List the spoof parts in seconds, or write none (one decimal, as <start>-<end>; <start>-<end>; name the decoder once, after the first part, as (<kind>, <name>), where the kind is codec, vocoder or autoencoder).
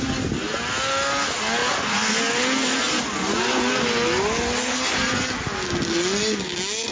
none